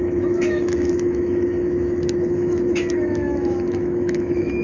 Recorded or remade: remade